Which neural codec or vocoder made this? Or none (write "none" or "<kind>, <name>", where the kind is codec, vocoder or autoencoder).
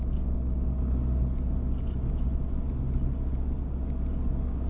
none